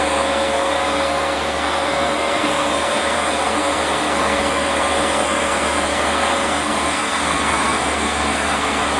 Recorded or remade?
remade